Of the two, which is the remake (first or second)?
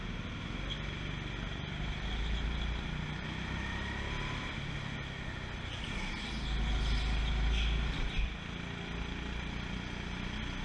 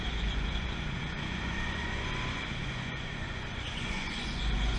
second